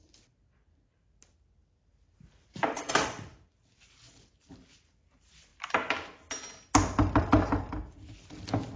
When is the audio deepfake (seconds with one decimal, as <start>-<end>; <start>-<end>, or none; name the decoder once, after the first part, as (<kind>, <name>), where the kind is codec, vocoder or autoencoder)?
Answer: none